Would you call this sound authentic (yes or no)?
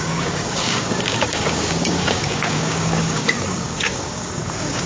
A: no